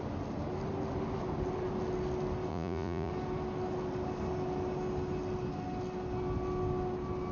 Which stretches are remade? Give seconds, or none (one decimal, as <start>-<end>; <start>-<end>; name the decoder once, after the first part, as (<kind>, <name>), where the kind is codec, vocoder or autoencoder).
2.5-3.1 (vocoder, Vocos)